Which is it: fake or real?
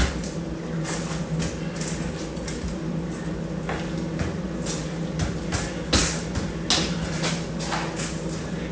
real